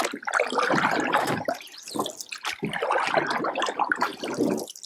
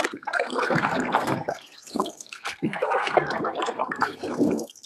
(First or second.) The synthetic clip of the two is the second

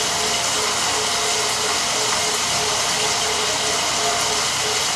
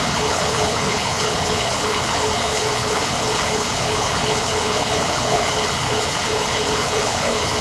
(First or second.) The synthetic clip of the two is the second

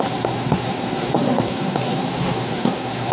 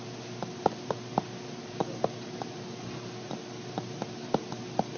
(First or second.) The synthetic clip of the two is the first